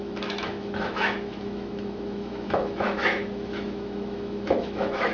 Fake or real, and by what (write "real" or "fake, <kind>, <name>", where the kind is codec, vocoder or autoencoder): fake, autoencoder, DAC-VAE